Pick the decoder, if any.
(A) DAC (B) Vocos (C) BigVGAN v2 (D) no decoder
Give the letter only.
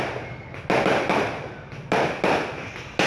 D